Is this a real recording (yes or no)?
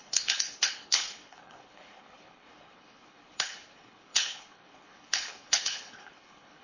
no